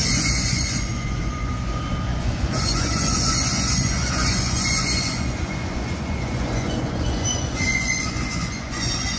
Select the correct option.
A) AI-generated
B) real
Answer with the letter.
A